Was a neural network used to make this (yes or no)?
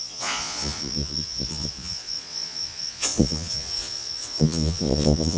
yes